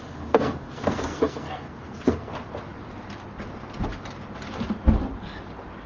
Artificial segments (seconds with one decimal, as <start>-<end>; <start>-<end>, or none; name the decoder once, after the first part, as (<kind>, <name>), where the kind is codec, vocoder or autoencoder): 0.0-2.3 (codec, SNAC)